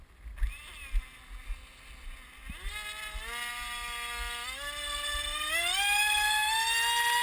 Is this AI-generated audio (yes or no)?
no